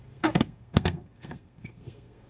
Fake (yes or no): yes